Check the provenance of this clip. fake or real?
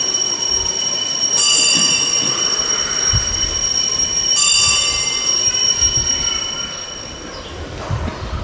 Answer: real